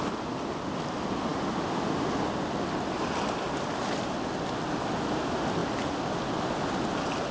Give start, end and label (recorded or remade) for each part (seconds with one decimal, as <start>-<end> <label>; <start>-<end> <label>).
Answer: 0.0-7.3 recorded